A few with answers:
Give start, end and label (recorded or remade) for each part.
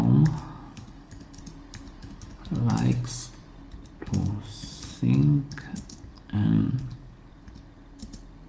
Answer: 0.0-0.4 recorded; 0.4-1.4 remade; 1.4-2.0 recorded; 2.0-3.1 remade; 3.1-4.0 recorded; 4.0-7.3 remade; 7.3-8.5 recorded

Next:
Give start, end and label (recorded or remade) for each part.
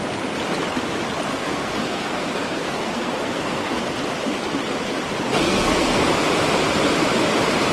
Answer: 0.0-1.3 recorded; 1.3-3.8 remade; 3.8-5.3 recorded; 5.3-6.0 remade; 6.0-7.7 recorded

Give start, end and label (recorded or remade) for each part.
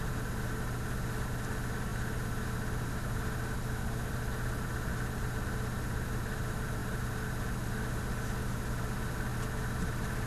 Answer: 0.0-1.9 remade; 1.9-4.1 recorded; 4.1-6.8 remade; 6.8-8.0 recorded; 8.0-9.3 remade; 9.3-9.9 recorded; 9.9-10.3 remade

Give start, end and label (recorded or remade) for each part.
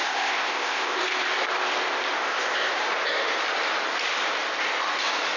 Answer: 0.0-1.0 remade; 1.0-2.2 recorded; 2.2-2.7 remade; 2.7-5.4 recorded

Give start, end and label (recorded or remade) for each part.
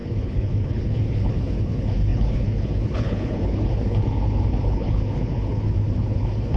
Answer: 0.0-6.6 remade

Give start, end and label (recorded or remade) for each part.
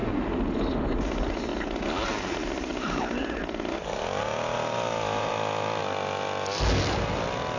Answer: 0.0-7.6 recorded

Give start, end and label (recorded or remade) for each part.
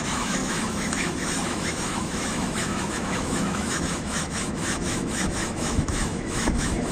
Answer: 0.0-6.9 remade